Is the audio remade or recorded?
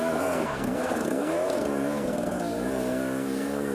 remade